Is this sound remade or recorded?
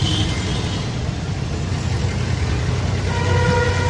recorded